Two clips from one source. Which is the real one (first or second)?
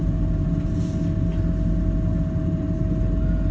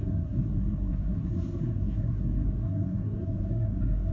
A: first